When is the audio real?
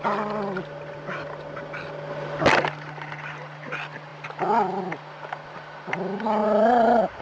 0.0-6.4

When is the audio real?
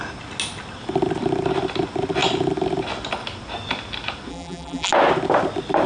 0.0-4.3; 4.9-5.9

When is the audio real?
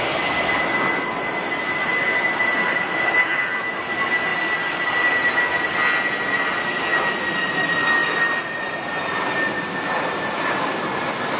0.0-8.0; 8.9-11.4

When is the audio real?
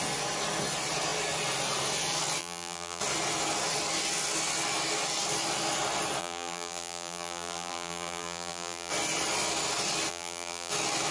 0.0-2.4; 3.0-6.2; 8.9-10.1; 10.7-11.1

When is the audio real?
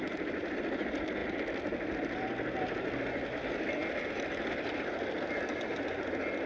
0.0-6.5